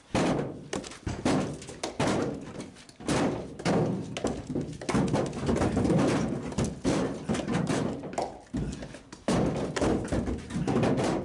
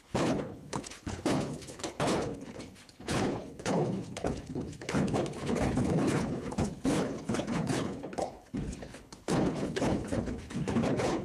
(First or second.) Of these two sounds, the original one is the first